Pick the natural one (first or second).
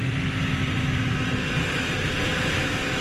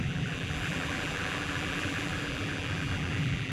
first